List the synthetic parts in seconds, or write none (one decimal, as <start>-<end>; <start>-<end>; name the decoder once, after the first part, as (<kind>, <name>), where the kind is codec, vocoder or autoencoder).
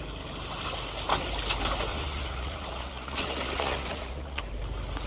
1.9-4.4 (vocoder, Vocos)